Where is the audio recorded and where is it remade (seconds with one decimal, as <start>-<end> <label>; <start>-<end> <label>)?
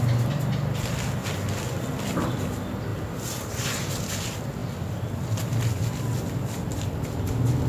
0.0-7.7 recorded